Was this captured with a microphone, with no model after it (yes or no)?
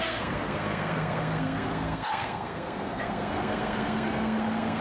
no